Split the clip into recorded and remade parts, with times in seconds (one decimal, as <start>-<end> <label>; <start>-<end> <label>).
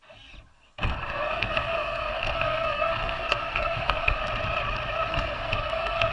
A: 0.0-0.5 recorded; 0.5-4.2 remade; 4.2-5.1 recorded; 5.1-6.1 remade